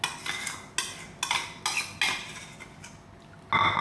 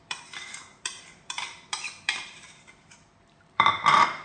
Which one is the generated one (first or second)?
second